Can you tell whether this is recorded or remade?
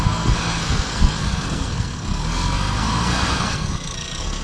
remade